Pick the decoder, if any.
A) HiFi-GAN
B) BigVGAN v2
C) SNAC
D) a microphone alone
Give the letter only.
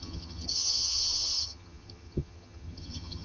A